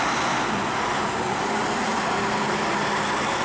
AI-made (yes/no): no